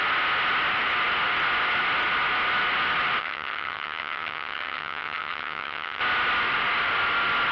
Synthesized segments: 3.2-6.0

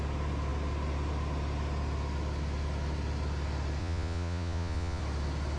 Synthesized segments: 3.8-5.0

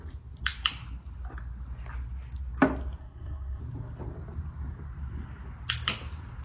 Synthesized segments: 3.0-3.6

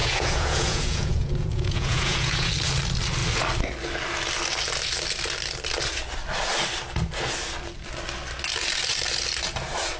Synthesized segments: 0.0-2.5

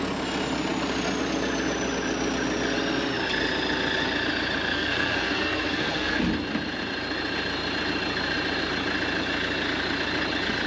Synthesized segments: 4.7-6.2

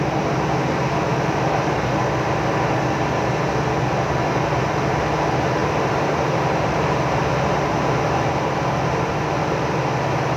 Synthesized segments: 1.1-2.0; 5.6-8.3

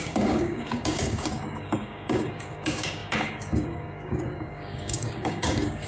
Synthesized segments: 0.0-5.9